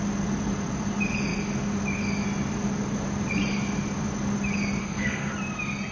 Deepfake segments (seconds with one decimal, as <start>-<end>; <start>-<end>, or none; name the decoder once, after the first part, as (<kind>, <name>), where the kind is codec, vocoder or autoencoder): 4.8-5.3 (codec, SNAC)